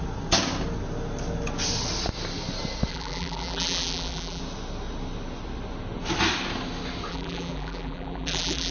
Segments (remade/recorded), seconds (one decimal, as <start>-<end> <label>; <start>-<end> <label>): 0.0-2.9 recorded; 2.9-4.4 remade; 4.4-7.1 recorded; 7.1-8.7 remade